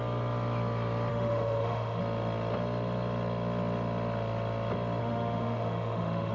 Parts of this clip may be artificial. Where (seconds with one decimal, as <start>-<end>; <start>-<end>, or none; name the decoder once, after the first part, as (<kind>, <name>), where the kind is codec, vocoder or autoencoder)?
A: 1.1-2.0 (autoencoder, DAC-VAE); 5.0-6.3